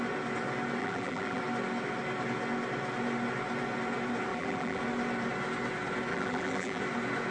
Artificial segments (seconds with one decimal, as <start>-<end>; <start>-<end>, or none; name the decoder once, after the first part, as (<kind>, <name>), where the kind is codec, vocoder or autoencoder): 0.8-1.4 (vocoder, BigVGAN v2); 4.3-4.8; 6.1-6.8